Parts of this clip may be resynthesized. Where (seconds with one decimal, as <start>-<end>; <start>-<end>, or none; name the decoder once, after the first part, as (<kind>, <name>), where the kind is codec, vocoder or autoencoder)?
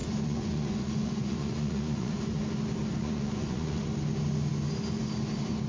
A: 0.0-2.4 (vocoder, Vocos); 3.0-3.8